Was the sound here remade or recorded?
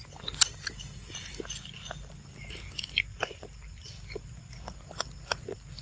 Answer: recorded